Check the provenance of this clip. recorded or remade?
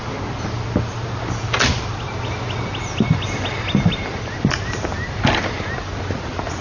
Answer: recorded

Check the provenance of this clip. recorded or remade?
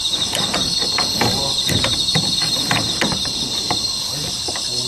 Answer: recorded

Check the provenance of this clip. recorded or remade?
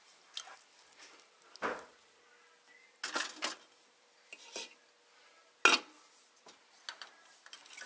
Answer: recorded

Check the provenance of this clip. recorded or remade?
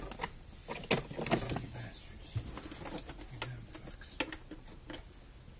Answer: recorded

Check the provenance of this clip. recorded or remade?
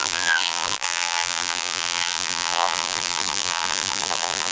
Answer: remade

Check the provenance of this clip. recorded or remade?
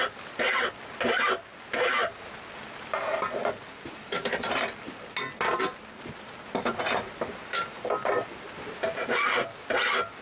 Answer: recorded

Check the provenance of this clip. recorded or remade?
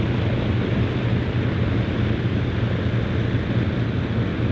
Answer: recorded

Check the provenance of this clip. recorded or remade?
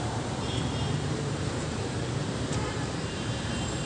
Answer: remade